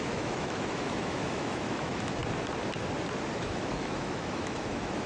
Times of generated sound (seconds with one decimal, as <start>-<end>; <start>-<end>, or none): 0.0-2.2; 3.4-5.1